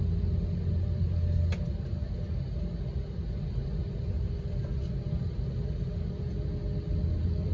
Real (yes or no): yes